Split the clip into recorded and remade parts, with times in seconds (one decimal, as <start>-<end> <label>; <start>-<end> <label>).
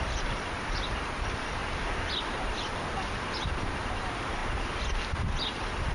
0.0-1.6 remade; 1.6-3.7 recorded; 3.7-4.4 remade; 4.4-5.1 recorded; 5.1-5.9 remade